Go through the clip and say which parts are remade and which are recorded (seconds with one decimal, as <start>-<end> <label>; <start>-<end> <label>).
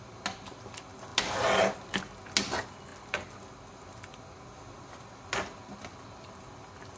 0.0-7.0 recorded